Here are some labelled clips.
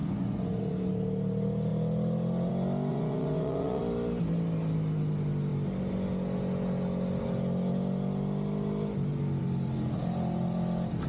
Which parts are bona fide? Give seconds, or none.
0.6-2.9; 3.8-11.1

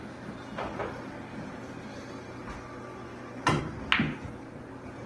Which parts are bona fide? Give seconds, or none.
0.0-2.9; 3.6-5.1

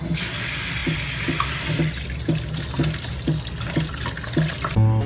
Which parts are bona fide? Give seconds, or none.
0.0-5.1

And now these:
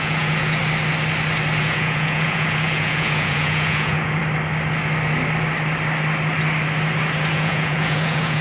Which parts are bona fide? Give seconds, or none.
0.6-1.6; 4.2-7.3

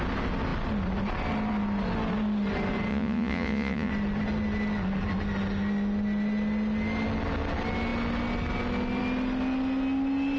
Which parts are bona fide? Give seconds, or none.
0.0-2.9; 3.9-10.4

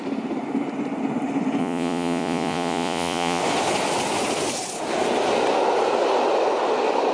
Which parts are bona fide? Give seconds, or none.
0.0-1.6; 3.4-7.1